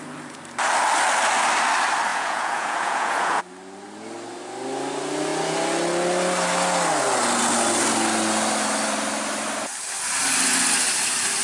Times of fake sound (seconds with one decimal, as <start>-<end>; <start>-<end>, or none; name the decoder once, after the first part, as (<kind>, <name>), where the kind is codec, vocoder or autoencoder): 2.1-3.4 (vocoder, Vocos)